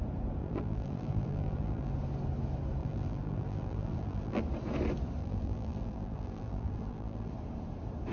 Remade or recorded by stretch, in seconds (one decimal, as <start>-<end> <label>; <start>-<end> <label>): 0.0-0.4 recorded; 0.4-1.9 remade; 1.9-2.8 recorded; 2.8-4.4 remade; 4.4-5.2 recorded; 5.2-7.3 remade; 7.3-8.1 recorded